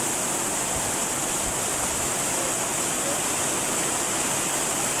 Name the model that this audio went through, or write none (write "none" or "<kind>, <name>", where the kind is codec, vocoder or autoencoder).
none